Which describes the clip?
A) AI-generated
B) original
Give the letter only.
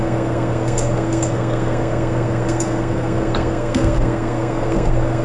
A